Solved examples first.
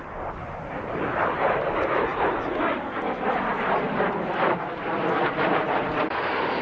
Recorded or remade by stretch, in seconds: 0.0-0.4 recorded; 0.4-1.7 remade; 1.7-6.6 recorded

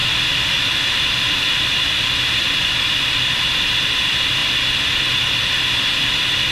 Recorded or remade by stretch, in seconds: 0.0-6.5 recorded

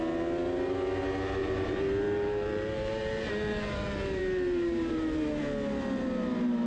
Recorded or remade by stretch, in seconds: 0.0-1.4 recorded; 1.4-5.4 remade; 5.4-6.7 recorded

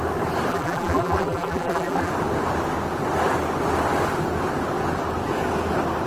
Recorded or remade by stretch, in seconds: 0.0-0.5 recorded; 0.5-2.1 remade; 2.1-6.1 recorded

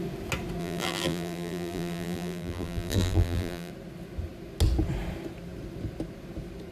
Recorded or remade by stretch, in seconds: 0.0-0.6 recorded; 0.6-3.7 remade; 3.7-6.7 recorded